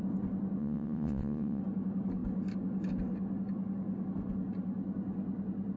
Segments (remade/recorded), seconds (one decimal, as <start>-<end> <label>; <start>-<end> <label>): 0.0-0.6 recorded; 0.6-1.6 remade; 1.6-5.8 recorded